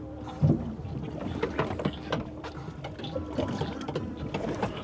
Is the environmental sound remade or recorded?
recorded